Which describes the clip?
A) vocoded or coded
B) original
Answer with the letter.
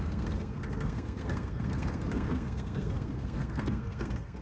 A